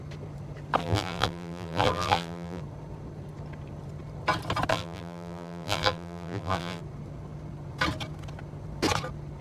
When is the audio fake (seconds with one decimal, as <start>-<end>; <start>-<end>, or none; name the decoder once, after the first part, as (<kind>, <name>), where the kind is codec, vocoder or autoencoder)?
0.8-2.6 (vocoder, BigVGAN v2); 4.7-6.8